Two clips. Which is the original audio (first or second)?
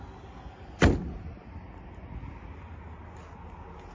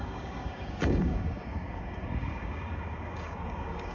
first